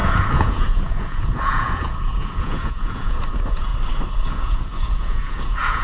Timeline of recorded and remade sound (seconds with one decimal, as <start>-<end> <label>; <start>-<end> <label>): 0.0-3.7 remade; 3.7-4.3 recorded; 4.3-5.8 remade